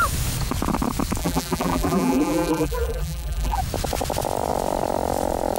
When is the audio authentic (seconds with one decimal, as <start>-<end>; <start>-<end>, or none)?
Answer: 0.0-1.2; 3.6-5.6